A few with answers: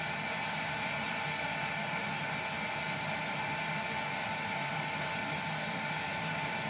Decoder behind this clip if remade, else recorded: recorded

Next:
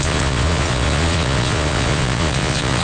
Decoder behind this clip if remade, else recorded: remade, vocoder, Vocos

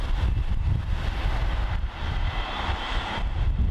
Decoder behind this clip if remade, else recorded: remade, vocoder, BigVGAN v2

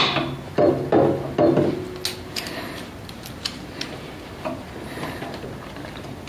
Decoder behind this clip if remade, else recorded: recorded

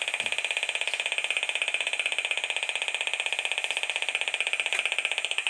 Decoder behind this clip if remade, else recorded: recorded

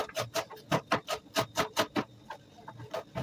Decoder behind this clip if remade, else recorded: recorded